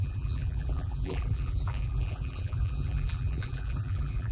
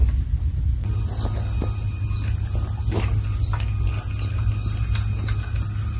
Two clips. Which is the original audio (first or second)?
second